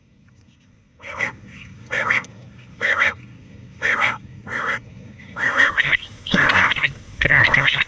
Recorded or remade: remade